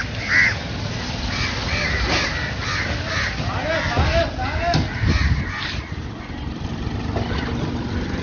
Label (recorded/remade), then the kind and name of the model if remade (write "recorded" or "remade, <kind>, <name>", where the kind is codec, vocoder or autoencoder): recorded